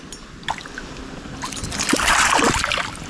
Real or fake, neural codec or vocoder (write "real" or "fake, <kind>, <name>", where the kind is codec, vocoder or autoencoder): real